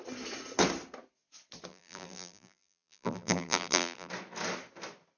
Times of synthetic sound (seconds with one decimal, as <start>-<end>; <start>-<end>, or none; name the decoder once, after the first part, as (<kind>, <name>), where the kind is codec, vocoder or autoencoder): 1.7-4.1 (vocoder, BigVGAN v2)